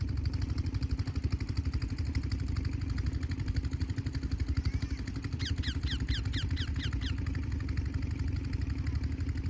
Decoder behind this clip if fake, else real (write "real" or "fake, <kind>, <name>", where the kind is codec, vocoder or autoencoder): real